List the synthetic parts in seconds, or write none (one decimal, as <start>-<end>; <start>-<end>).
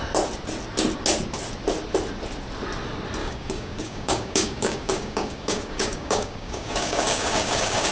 3.2-7.9